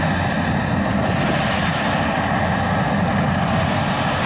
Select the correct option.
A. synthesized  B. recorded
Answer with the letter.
B